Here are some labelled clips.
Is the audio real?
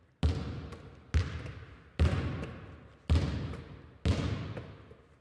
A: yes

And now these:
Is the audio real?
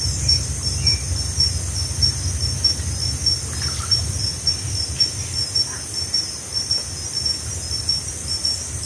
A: yes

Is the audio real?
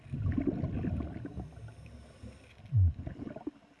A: yes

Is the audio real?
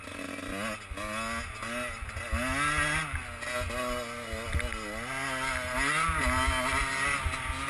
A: yes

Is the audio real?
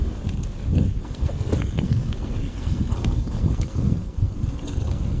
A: no